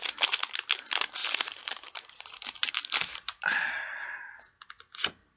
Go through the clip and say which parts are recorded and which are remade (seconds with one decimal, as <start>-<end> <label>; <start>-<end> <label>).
0.0-1.2 recorded; 1.2-2.7 remade; 2.7-3.1 recorded; 3.1-3.8 remade; 3.8-5.4 recorded